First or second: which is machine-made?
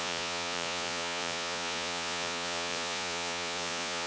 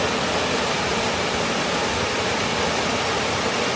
first